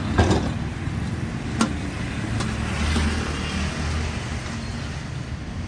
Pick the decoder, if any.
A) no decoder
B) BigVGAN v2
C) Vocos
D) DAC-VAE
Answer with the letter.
A